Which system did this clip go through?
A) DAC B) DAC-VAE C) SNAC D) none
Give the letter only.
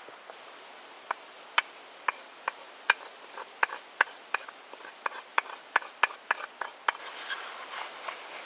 D